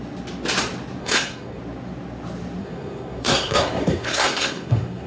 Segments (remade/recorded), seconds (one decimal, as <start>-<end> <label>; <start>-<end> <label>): 0.0-1.0 recorded; 1.0-1.6 remade; 1.6-2.6 recorded; 2.6-5.1 remade